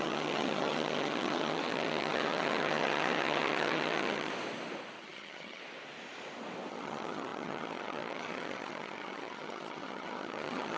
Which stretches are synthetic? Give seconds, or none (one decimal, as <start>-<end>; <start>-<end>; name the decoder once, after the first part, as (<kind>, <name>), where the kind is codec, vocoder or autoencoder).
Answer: 0.0-4.3 (vocoder, HiFi-GAN); 5.0-5.6; 6.7-10.8